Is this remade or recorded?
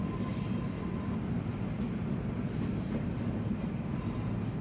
recorded